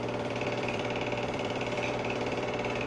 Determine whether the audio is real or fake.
fake